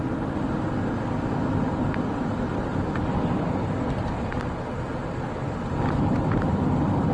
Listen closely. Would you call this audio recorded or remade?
recorded